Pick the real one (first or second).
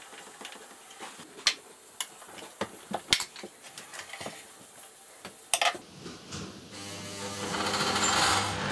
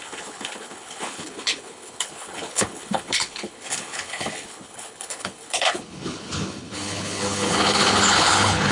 first